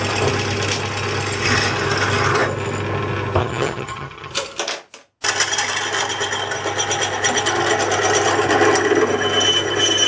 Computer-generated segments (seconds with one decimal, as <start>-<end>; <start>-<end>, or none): 3.4-4.3